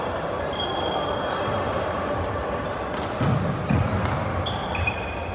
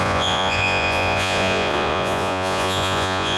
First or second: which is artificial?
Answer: second